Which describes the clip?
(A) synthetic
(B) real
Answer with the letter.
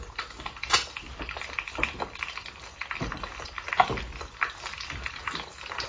B